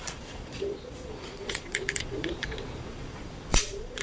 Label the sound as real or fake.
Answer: fake